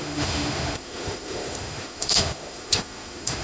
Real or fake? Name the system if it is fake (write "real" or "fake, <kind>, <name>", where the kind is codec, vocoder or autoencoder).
fake, autoencoder, DAC-VAE